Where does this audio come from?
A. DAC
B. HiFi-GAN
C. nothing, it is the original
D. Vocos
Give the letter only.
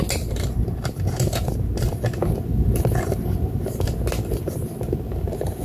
C